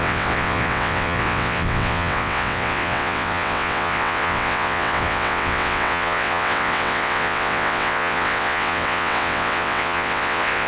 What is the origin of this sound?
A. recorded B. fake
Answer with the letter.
B